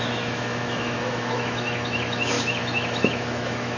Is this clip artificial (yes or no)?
yes